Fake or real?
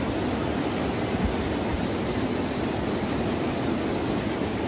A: real